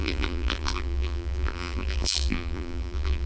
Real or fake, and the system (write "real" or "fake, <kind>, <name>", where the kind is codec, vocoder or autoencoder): fake, vocoder, BigVGAN v2